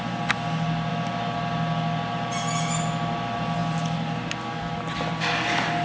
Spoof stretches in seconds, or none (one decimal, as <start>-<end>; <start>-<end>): none